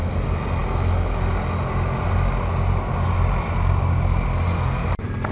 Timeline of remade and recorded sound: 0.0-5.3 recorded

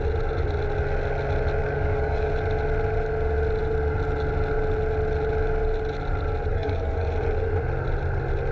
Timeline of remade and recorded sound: 0.0-1.6 recorded; 1.6-2.3 remade; 2.3-6.5 recorded; 6.5-7.1 remade; 7.1-8.5 recorded